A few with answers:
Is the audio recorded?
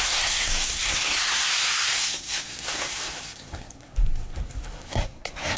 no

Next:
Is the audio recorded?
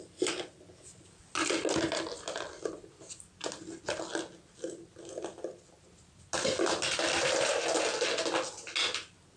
yes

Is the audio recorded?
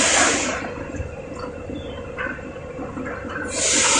yes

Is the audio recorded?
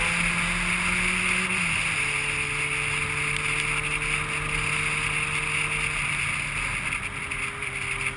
yes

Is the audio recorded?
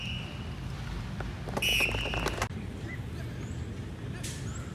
yes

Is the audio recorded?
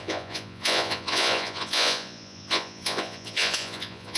no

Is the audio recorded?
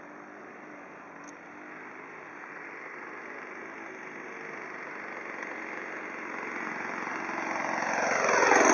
yes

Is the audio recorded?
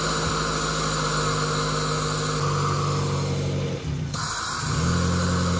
yes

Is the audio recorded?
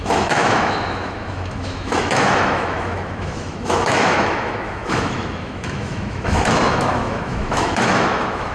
no